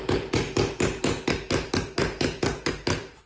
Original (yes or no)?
yes